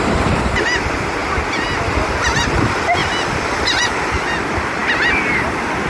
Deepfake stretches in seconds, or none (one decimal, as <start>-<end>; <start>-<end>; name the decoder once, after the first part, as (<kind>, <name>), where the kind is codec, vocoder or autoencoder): none